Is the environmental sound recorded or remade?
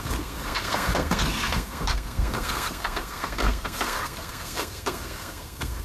remade